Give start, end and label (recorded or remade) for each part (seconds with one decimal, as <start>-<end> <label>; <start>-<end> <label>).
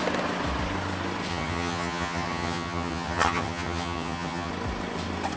0.0-1.3 recorded; 1.3-4.5 remade; 4.5-5.4 recorded